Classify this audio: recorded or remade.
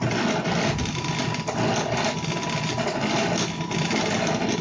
recorded